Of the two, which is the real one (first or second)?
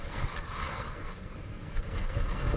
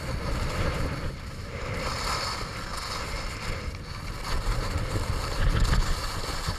second